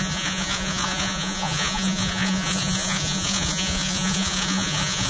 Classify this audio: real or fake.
fake